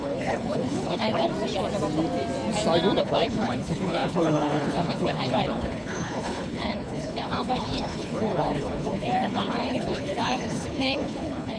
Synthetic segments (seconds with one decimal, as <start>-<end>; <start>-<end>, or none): 0.0-1.3; 3.0-11.6